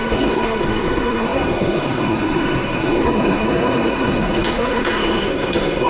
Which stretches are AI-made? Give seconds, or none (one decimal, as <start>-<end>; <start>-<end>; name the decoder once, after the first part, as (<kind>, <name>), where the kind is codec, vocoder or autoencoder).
0.0-5.9 (codec, SNAC)